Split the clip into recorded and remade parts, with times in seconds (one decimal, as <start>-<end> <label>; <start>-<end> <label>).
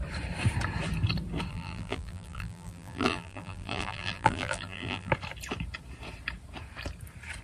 0.0-1.5 recorded; 1.5-5.1 remade; 5.1-7.4 recorded